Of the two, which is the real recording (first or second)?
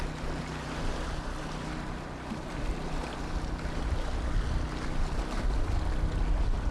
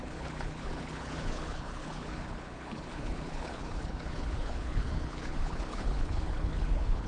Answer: first